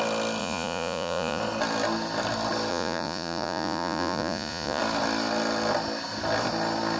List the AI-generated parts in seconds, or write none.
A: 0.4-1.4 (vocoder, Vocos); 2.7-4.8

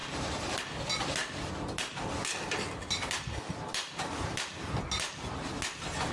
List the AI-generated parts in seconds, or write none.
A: 0.0-0.6 (vocoder, BigVGAN v2)

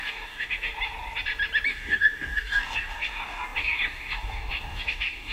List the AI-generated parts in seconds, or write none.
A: 0.0-0.7 (codec, DAC); 1.7-5.3

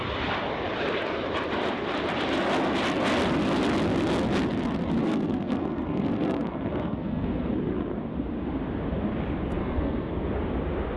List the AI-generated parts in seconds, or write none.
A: 5.0-7.5 (codec, SNAC); 9.6-10.3